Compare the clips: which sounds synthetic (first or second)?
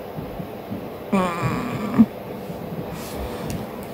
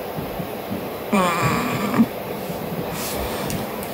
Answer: second